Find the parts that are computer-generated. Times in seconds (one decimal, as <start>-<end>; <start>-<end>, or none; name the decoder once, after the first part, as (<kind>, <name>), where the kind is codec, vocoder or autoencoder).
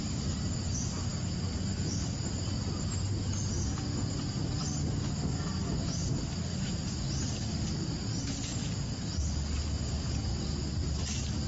none